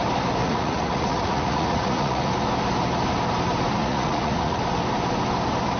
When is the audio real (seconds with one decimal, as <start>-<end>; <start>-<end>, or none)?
0.0-0.4; 2.3-3.8; 4.6-5.8